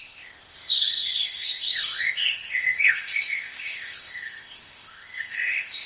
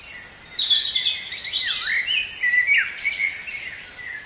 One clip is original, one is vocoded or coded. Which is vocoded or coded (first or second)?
first